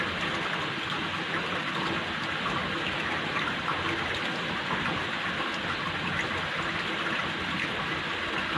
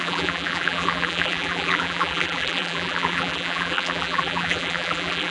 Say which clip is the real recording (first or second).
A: first